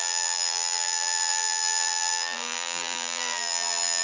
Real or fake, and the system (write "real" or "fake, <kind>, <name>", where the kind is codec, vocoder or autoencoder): fake, vocoder, BigVGAN v2